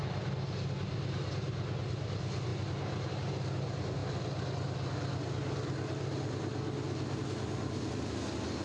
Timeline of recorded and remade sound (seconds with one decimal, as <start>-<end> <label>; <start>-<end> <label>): 0.0-8.6 recorded